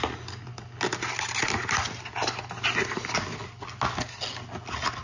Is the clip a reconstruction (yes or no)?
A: no